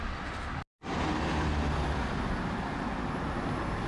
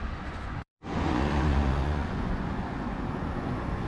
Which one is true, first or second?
first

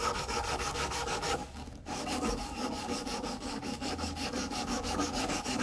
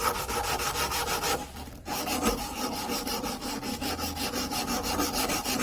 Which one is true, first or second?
second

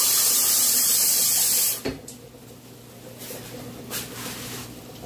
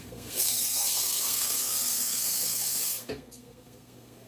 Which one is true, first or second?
first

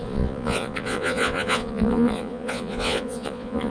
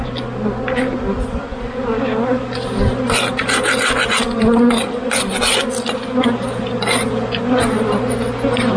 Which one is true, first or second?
second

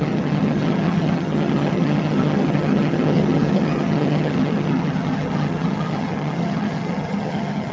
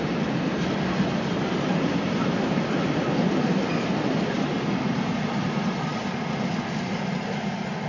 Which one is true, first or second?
second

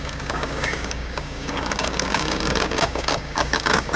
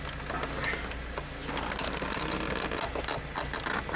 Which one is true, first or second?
second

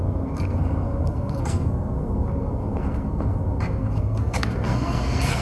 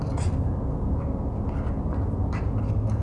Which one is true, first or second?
second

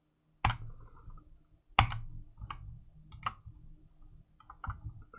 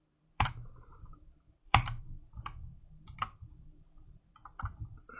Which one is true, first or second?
first